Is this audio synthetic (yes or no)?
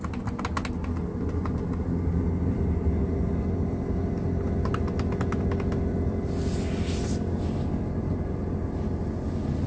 no